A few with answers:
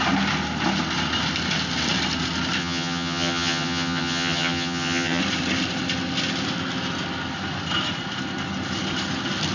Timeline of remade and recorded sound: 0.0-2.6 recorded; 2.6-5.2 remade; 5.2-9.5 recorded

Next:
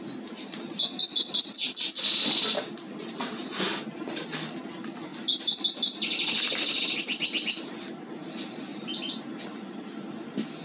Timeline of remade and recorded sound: 0.0-10.6 recorded

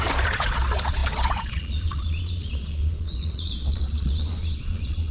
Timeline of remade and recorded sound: 0.0-5.1 remade

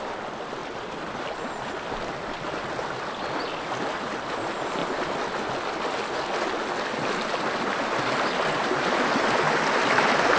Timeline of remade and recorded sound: 0.0-10.4 recorded

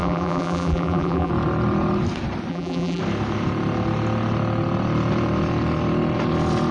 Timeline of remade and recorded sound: 0.0-1.3 remade; 1.3-2.5 recorded; 2.5-3.0 remade; 3.0-6.7 recorded

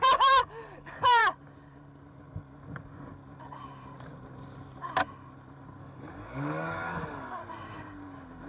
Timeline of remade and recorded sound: 0.0-1.2 remade; 1.2-5.8 recorded; 5.8-7.4 remade; 7.4-8.5 recorded